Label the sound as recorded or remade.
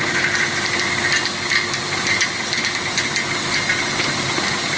recorded